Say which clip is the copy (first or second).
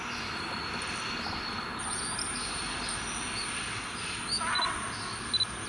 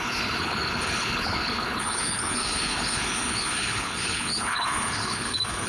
second